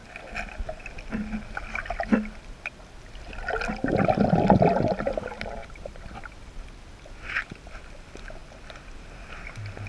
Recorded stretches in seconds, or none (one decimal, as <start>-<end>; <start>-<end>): 0.0-9.9